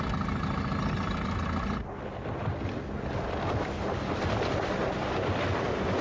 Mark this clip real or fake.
real